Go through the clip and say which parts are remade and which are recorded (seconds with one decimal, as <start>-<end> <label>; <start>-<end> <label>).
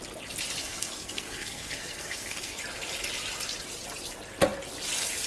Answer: 0.0-0.6 recorded; 0.6-2.6 remade; 2.6-5.3 recorded